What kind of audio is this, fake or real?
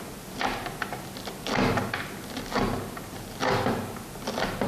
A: real